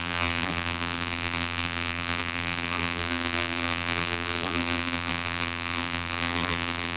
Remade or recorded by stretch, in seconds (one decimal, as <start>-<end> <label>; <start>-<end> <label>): 0.0-7.0 remade

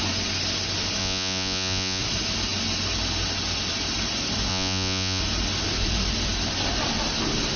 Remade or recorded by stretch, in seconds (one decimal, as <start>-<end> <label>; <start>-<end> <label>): 0.0-1.0 recorded; 1.0-2.0 remade; 2.0-4.5 recorded; 4.5-5.2 remade; 5.2-7.6 recorded

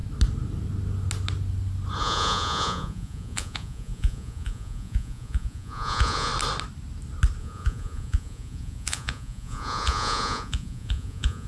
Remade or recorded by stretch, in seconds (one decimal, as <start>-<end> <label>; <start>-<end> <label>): 0.0-2.0 recorded; 2.0-6.3 remade; 6.3-7.4 recorded; 7.4-11.5 remade

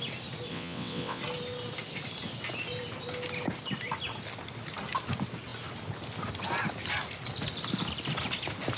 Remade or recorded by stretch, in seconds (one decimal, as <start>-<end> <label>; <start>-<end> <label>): 0.0-0.5 recorded; 0.5-1.2 remade; 1.2-8.8 recorded